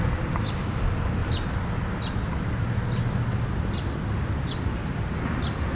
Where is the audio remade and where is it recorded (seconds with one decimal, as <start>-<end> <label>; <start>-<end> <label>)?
0.0-5.7 recorded